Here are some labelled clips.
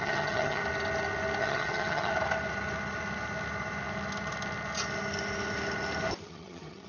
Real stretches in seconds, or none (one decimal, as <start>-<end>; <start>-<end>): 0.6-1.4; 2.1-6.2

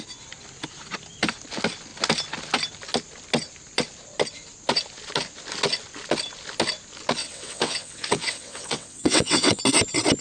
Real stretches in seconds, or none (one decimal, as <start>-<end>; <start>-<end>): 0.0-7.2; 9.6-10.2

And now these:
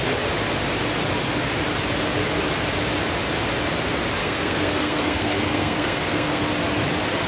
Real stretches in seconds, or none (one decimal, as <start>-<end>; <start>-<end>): 0.0-4.2; 6.4-7.3

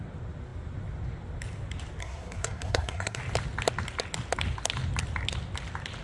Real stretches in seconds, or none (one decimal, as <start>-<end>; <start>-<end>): 0.0-2.0; 3.2-6.0

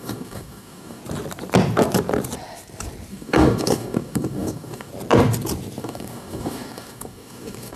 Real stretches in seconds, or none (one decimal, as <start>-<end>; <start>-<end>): 1.0-3.1; 4.9-5.8

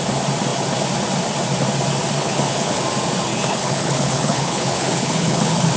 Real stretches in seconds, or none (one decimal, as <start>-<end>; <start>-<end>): 0.0-2.2; 2.8-3.3